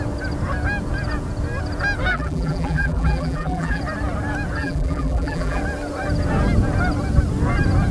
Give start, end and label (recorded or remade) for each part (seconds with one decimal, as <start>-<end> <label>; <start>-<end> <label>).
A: 0.0-2.1 recorded; 2.1-3.8 remade; 3.8-4.6 recorded; 4.6-5.6 remade; 5.6-7.9 recorded